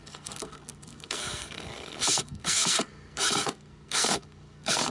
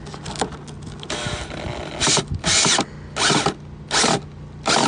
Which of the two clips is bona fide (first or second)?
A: second